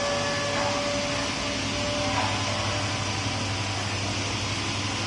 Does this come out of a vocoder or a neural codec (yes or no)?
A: no